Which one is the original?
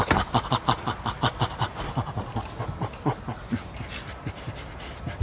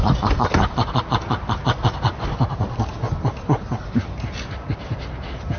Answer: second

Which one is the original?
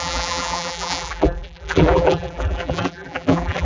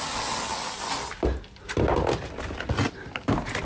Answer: second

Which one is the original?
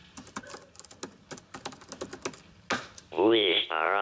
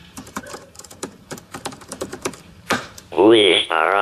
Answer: first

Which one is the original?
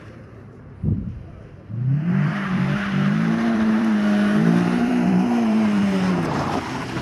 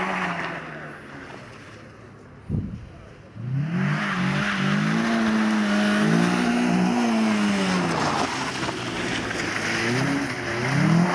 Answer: second